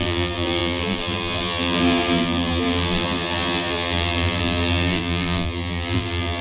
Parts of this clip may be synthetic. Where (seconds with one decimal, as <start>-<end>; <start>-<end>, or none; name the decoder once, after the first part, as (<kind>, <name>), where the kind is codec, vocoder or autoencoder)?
0.0-6.4 (vocoder, BigVGAN v2)